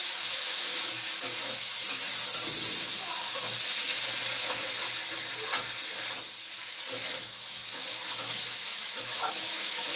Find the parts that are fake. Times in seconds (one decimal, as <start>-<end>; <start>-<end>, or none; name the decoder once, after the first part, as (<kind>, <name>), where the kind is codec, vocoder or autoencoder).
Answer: 0.0-0.7 (autoencoder, DAC-VAE); 1.6-2.1; 7.2-10.0